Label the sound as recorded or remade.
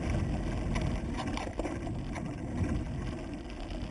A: recorded